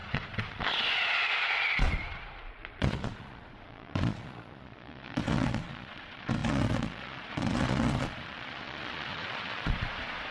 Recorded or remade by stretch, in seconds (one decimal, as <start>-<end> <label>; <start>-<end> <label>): 0.0-10.3 remade